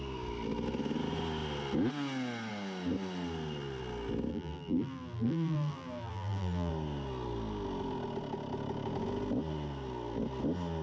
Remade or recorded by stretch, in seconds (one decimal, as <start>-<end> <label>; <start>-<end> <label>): 0.0-4.3 recorded; 4.3-6.7 remade; 6.7-10.8 recorded